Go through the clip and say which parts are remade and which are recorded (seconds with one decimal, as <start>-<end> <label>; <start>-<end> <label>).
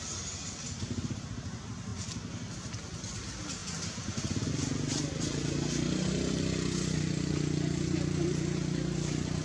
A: 0.0-9.4 recorded